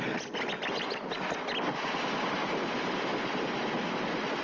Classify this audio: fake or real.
real